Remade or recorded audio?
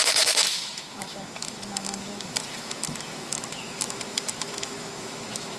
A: remade